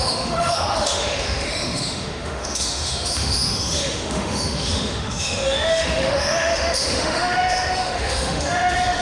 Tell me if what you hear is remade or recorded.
remade